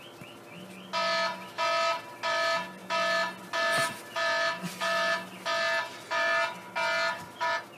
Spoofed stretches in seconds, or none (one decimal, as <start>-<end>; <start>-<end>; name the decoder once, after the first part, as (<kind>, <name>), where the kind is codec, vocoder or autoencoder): none